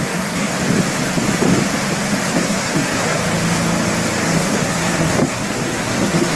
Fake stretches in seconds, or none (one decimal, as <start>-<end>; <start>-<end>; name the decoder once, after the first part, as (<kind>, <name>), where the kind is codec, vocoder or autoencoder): 0.0-0.5 (codec, SNAC); 2.3-3.2; 4.4-6.3